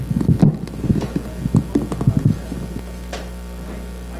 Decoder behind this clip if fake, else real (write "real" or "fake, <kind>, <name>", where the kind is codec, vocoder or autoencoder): real